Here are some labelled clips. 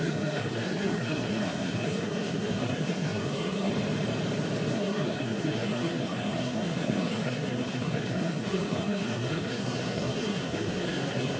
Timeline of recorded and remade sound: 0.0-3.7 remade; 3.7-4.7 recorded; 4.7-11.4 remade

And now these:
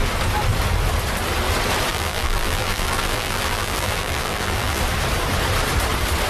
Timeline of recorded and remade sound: 0.0-1.9 recorded; 1.9-4.8 remade; 4.8-6.3 recorded